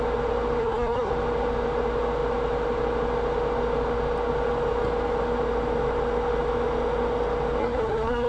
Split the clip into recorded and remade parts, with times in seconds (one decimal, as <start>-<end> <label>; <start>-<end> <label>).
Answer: 0.0-0.6 recorded; 0.6-1.1 remade; 1.1-7.6 recorded; 7.6-8.3 remade